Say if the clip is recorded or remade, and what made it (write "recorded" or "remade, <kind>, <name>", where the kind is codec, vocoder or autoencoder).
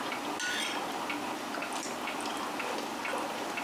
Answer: recorded